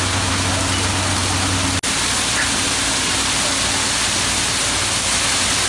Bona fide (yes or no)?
yes